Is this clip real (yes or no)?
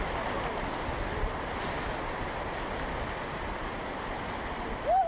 yes